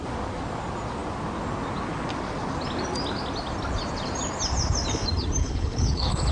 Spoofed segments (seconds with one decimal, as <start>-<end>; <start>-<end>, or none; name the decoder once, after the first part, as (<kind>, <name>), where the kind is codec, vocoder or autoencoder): 5.4-6.3 (codec, HILCodec)